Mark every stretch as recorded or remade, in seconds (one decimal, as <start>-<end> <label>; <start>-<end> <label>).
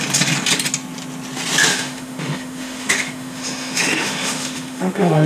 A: 0.0-1.7 recorded; 1.7-5.3 remade